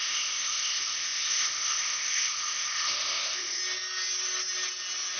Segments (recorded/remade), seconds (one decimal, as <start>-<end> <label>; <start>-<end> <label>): 0.0-3.6 remade; 3.6-5.2 recorded